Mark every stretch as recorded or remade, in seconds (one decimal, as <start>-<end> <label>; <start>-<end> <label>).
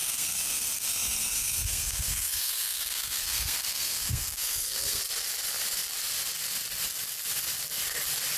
0.0-5.0 remade; 5.0-8.4 recorded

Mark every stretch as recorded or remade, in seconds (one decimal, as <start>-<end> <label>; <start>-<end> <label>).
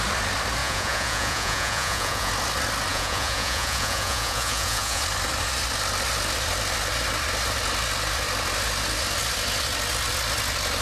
0.0-0.6 recorded; 0.6-2.3 remade; 2.3-2.9 recorded; 2.9-5.0 remade; 5.0-10.8 recorded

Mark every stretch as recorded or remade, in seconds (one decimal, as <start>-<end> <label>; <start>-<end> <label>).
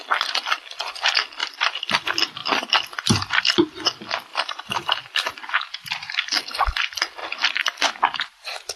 0.0-1.4 recorded; 1.4-2.0 remade; 2.0-4.3 recorded; 4.3-6.4 remade; 6.4-8.8 recorded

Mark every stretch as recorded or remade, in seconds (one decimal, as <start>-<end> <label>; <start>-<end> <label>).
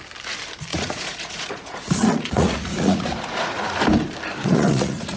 0.0-0.7 recorded; 0.7-3.8 remade; 3.8-4.4 recorded; 4.4-5.2 remade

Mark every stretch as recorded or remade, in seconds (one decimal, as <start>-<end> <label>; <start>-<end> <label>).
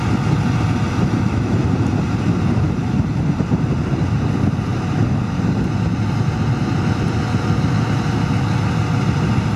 0.0-9.6 recorded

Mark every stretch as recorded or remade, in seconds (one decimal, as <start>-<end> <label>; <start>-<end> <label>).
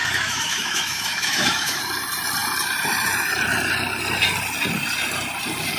0.0-1.8 remade; 1.8-5.8 recorded